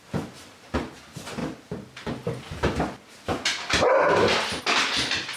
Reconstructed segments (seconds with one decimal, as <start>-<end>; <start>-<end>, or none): none